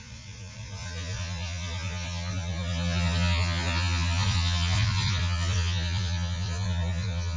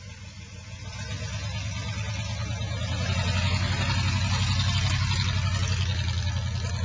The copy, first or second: first